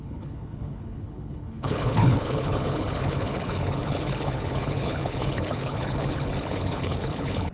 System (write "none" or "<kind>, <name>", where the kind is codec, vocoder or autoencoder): codec, HILCodec